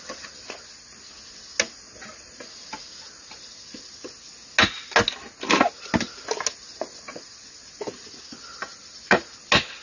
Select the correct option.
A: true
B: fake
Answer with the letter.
A